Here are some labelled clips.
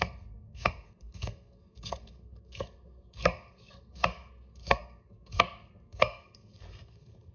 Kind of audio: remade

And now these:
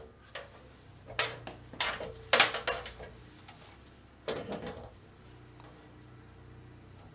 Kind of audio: recorded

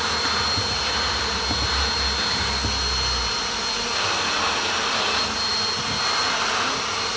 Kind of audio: recorded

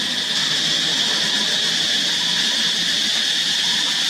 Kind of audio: recorded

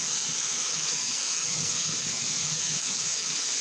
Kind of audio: remade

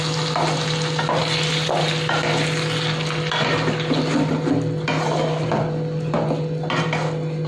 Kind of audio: recorded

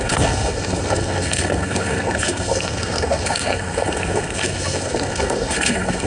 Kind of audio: remade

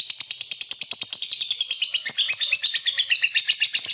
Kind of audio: recorded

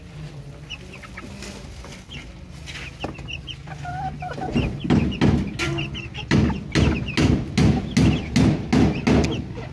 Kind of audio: recorded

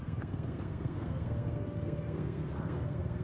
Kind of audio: remade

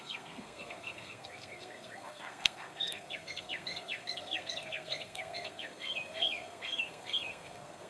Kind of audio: remade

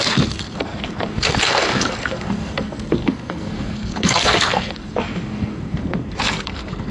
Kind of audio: remade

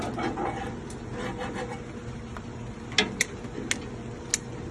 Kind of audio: recorded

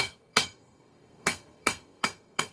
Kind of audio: remade